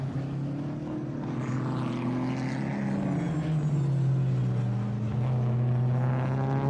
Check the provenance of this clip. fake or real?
real